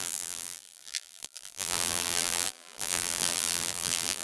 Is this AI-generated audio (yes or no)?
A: yes